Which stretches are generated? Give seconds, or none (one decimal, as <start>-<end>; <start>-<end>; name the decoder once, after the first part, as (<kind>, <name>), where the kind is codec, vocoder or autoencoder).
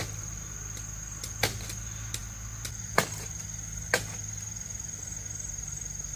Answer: none